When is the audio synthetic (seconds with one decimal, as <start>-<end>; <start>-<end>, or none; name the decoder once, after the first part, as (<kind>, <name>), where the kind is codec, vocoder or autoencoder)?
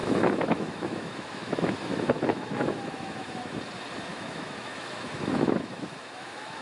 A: 0.0-3.6 (autoencoder, DAC-VAE); 4.1-6.6